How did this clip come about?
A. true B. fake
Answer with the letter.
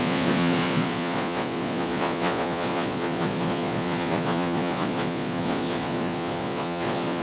B